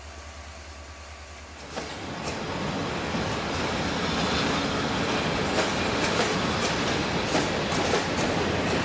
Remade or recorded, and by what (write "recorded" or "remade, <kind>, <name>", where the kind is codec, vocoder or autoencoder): recorded